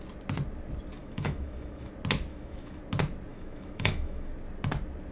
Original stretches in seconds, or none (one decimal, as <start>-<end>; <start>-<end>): 0.0-1.0; 1.9-2.3; 2.8-3.3; 4.3-5.1